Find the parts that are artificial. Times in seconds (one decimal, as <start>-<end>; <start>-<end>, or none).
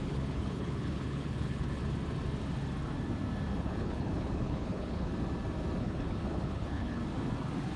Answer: 0.0-1.8; 3.6-5.1; 5.8-7.0